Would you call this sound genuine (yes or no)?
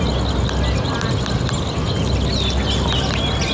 yes